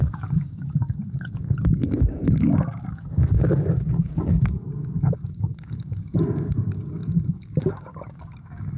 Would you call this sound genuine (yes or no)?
no